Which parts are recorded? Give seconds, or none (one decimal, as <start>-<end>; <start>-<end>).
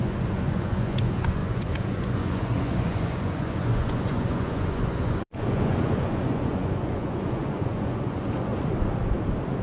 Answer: 8.5-9.6